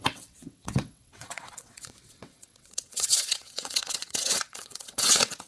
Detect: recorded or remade remade